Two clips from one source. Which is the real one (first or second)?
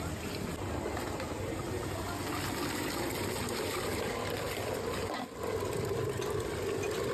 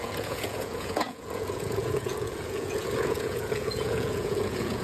first